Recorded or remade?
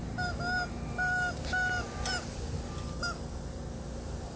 recorded